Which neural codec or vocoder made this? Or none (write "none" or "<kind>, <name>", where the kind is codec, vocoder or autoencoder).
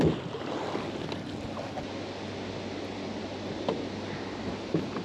none